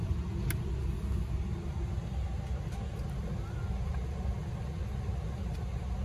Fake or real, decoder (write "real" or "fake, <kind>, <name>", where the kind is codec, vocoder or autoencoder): real